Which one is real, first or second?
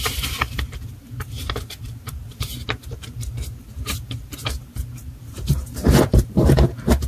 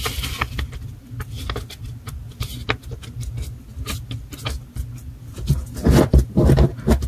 second